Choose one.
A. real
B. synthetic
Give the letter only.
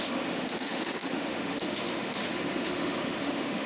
B